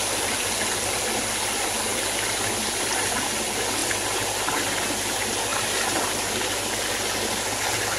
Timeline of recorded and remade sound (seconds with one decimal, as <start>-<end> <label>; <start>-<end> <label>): 0.0-1.9 recorded; 1.9-3.0 remade; 3.0-5.5 recorded; 5.5-6.9 remade; 6.9-8.0 recorded